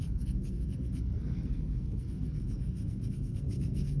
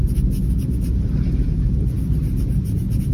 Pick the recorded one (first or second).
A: second